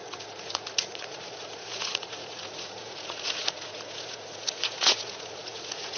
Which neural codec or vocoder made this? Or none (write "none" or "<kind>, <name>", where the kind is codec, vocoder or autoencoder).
vocoder, Vocos